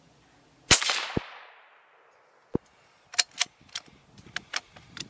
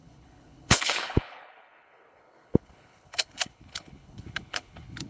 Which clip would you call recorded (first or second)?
first